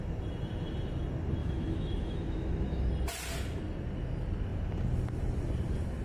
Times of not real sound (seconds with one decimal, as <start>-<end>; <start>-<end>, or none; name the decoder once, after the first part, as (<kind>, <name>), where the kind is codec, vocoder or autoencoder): 1.4-2.9 (autoencoder, DAC-VAE)